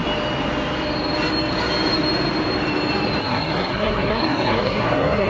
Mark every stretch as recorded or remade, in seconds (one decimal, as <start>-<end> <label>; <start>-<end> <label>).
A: 0.0-3.2 recorded; 3.2-5.3 remade